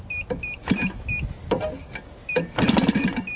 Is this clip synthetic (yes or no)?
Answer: no